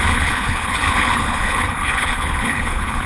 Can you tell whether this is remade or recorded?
remade